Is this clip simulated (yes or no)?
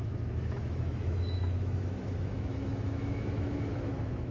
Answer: yes